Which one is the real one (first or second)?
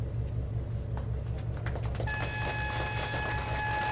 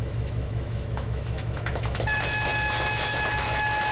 first